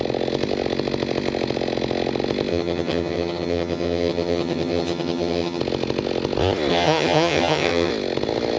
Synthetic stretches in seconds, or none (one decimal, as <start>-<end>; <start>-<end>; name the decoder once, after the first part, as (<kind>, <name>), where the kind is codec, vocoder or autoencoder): 2.5-5.6 (vocoder, HiFi-GAN); 6.7-7.9